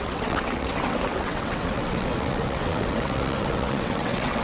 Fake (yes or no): yes